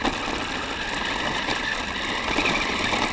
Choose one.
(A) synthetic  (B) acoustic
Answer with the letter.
B